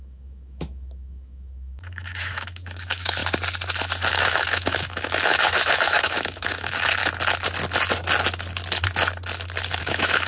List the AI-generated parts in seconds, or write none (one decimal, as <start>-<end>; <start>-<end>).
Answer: 0.0-3.2; 4.1-7.0; 9.8-10.3